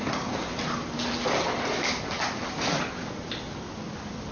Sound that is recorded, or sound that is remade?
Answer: recorded